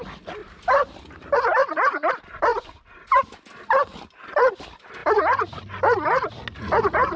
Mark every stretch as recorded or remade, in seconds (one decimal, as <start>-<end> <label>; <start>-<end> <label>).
0.0-7.2 recorded